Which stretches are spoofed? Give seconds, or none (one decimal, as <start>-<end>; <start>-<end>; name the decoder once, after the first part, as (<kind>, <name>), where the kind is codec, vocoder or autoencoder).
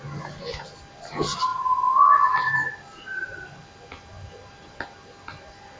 none